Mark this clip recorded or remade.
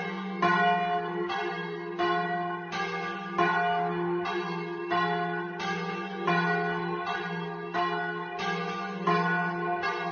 recorded